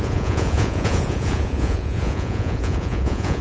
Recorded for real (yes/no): no